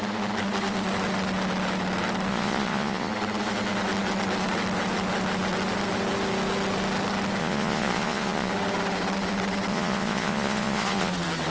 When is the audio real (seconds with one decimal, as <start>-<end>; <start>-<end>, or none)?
0.0-2.3; 3.1-7.4; 8.5-9.7; 11.1-11.5